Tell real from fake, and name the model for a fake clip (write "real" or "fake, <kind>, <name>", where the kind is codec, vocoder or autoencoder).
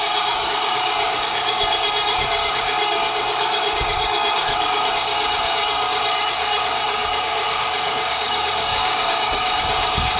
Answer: fake, codec, DAC